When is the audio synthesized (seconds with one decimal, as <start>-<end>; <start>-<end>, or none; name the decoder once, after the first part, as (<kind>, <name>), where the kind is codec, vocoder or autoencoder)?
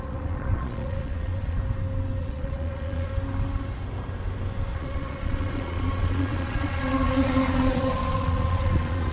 0.0-1.6 (vocoder, Vocos); 2.2-3.1; 4.7-9.1